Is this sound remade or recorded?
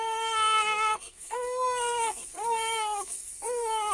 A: remade